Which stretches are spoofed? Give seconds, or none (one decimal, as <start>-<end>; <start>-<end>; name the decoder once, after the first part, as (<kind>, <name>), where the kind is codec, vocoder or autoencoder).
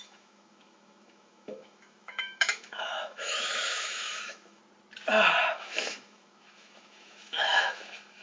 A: 0.0-4.6 (autoencoder, DAC-VAE); 5.5-8.2